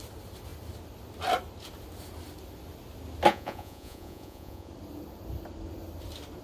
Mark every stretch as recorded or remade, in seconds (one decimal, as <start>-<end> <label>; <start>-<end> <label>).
0.0-3.3 recorded; 3.3-4.7 remade; 4.7-6.4 recorded